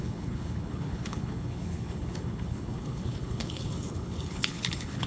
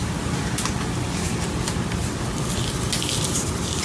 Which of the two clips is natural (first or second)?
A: second